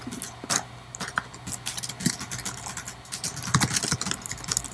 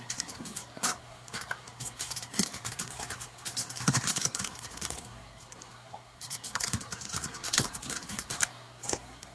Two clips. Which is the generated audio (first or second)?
second